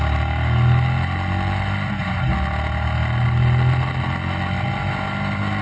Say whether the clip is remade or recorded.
recorded